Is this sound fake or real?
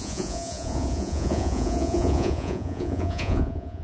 fake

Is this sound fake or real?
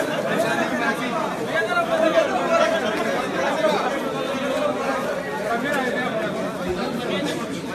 real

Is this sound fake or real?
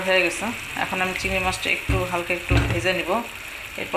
real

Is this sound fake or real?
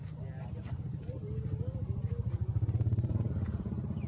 fake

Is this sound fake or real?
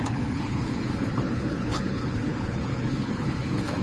fake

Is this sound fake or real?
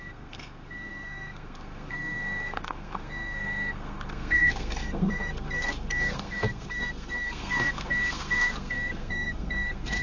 fake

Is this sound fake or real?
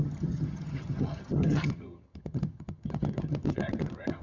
fake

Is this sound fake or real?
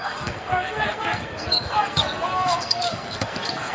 fake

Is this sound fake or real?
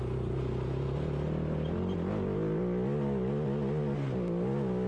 real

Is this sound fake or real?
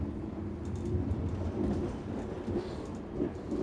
fake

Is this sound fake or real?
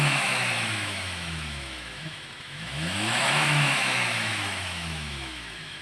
fake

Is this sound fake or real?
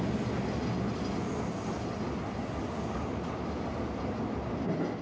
real